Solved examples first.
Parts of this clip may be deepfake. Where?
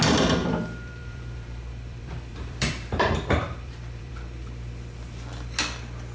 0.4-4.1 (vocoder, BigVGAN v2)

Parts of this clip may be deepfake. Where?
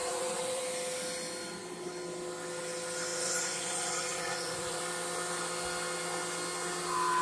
0.0-0.6 (vocoder, Vocos); 3.1-4.8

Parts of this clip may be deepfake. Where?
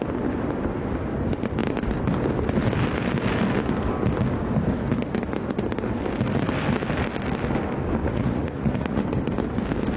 8.0-9.0 (vocoder, Vocos)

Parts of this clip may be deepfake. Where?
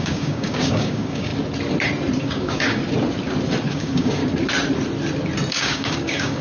0.0-1.3 (codec, DAC); 2.2-2.8; 3.7-4.2; 5.5-6.4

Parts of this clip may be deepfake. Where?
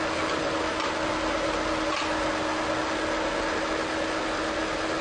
none